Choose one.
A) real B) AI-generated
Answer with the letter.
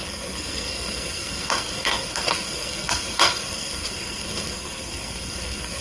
B